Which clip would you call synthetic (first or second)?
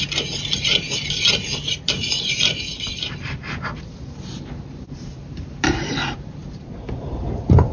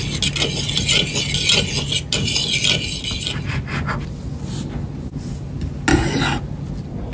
first